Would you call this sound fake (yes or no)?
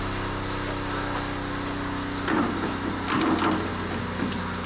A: no